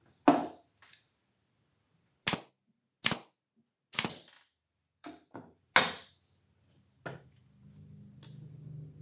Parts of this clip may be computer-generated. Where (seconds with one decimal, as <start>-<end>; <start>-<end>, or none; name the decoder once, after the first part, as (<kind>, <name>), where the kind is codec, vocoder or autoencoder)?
5.0-5.6 (vocoder, BigVGAN v2)